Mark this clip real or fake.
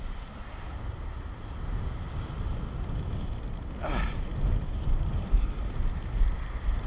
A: real